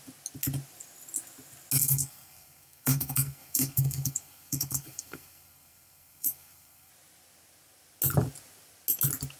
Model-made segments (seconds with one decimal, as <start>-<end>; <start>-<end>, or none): 1.8-6.9